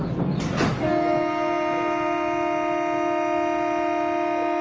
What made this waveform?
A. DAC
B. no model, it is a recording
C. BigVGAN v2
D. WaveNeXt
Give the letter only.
B